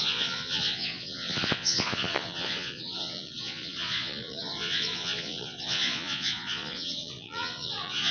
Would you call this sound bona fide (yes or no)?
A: no